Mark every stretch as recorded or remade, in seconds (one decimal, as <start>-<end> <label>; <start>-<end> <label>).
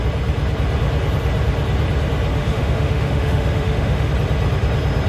0.0-2.3 recorded; 2.3-4.1 remade; 4.1-5.1 recorded